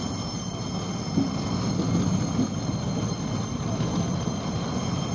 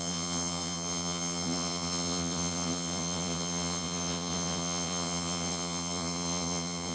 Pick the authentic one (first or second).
first